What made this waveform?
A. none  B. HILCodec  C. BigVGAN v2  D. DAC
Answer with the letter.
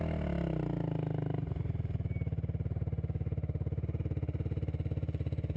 A